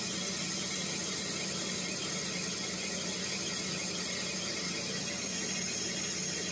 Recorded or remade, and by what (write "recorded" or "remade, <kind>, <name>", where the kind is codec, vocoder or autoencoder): recorded